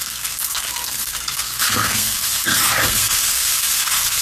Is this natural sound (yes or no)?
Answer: no